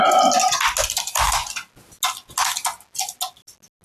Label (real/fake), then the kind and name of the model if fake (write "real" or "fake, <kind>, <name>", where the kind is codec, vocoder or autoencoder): real